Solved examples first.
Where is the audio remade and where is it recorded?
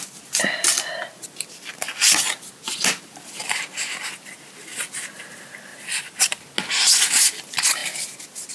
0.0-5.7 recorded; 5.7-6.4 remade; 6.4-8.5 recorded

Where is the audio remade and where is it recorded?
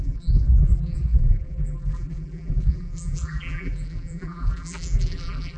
0.0-5.6 remade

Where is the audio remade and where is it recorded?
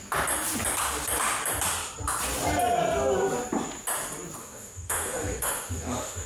0.0-4.4 recorded; 4.4-6.3 remade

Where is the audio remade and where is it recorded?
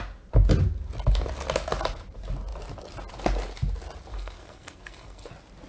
0.0-4.1 recorded; 4.1-5.3 remade; 5.3-5.7 recorded